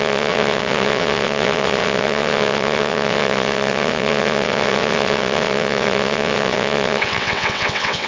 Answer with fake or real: fake